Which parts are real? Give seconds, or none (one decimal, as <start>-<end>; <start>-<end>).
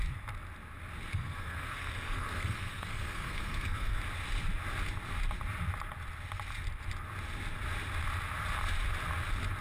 0.0-1.1; 4.0-9.6